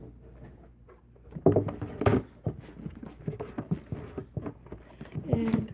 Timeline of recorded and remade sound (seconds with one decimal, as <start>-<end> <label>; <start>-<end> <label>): 0.0-5.7 recorded